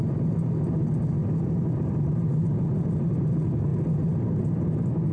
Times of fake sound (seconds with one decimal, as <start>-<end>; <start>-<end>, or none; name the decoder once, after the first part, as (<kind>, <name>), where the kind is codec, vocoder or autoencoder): none